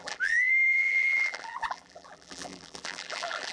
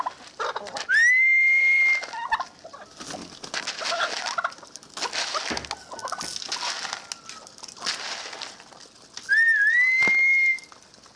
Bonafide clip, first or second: second